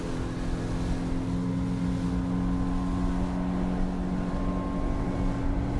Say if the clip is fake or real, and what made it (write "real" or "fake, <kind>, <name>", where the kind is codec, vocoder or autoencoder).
real